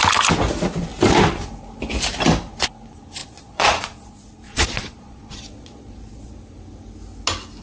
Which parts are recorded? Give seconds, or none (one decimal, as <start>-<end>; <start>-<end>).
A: 0.0-3.2; 6.3-7.6